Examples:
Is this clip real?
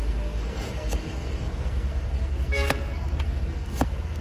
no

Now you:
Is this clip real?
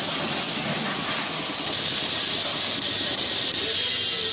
yes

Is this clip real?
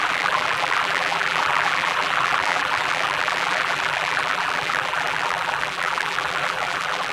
no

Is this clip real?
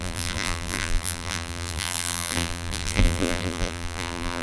no